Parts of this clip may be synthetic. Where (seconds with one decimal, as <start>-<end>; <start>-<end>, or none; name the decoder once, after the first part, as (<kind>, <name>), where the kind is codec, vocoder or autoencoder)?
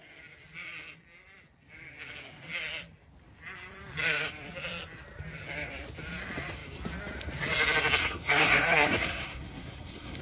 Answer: 8.0-10.2 (codec, SNAC)